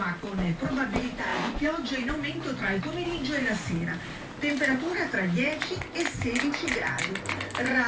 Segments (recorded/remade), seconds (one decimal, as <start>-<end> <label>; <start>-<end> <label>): 0.0-7.9 recorded